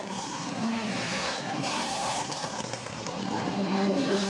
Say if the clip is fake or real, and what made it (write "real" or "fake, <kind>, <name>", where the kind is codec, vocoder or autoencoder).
fake, codec, SNAC